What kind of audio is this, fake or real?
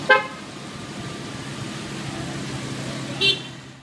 real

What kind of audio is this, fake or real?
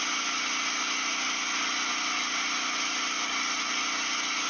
real